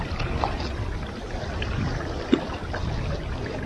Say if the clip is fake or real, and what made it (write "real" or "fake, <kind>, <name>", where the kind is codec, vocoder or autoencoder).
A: real